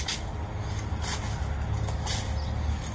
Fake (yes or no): no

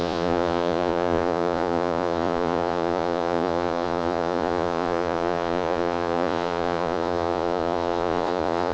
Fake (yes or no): yes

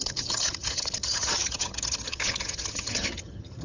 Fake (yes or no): yes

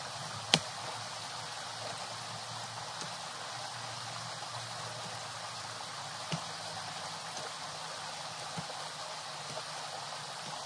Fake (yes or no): no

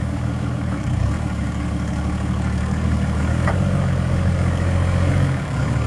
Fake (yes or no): yes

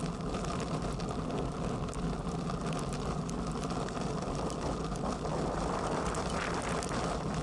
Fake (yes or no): no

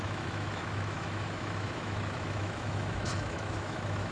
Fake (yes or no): yes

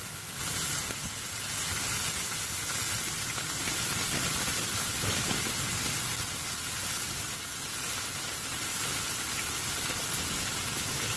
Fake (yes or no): no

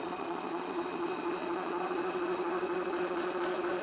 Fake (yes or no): yes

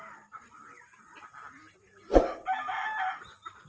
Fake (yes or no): no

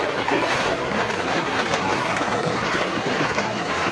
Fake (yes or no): yes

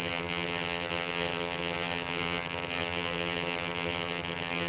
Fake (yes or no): yes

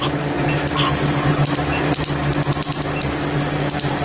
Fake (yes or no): no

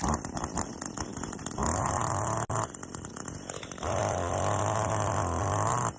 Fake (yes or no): no